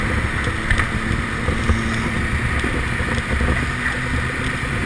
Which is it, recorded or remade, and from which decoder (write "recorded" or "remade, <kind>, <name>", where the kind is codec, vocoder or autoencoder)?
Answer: recorded